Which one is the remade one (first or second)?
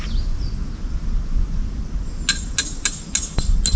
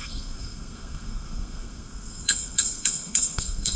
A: second